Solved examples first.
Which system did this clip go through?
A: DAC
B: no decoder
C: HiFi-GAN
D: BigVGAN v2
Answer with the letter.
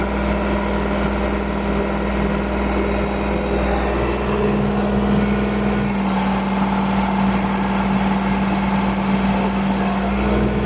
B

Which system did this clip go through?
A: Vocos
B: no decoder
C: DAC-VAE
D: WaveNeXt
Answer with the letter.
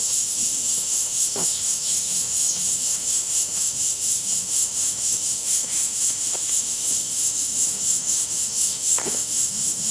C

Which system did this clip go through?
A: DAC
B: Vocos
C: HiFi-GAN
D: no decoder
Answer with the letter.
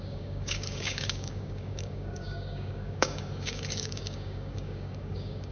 A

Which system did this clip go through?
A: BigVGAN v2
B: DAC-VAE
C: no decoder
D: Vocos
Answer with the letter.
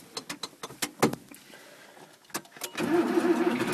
C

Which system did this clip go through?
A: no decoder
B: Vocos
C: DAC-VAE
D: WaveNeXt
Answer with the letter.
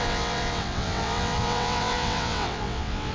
D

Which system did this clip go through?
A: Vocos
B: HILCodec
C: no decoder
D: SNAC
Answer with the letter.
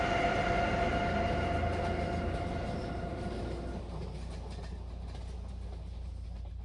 C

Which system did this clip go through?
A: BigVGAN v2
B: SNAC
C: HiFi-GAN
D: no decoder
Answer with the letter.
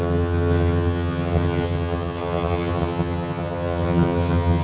C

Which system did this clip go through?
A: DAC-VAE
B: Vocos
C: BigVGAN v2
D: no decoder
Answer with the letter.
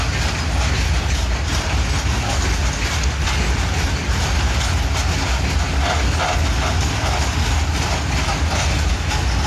D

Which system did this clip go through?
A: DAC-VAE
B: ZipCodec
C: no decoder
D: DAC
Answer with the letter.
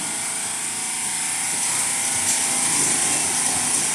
C